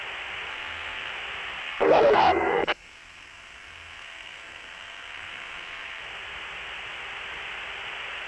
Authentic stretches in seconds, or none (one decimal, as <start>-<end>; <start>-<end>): 0.0-0.5; 1.1-1.6; 6.0-8.3